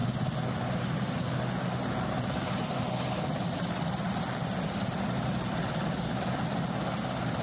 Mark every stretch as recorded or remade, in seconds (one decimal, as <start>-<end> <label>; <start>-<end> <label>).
0.0-7.4 recorded

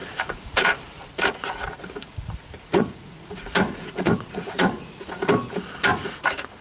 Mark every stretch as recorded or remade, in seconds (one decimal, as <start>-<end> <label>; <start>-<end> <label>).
0.0-0.7 remade; 0.7-1.1 recorded; 1.1-5.1 remade; 5.1-5.9 recorded; 5.9-6.6 remade

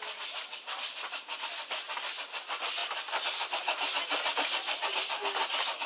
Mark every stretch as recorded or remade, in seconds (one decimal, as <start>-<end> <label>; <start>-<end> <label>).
0.0-5.9 recorded